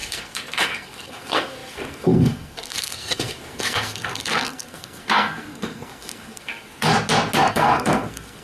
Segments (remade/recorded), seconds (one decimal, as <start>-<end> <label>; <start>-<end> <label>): 0.0-6.9 remade; 6.9-7.5 recorded; 7.5-8.4 remade